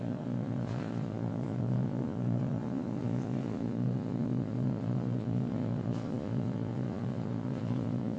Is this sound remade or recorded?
remade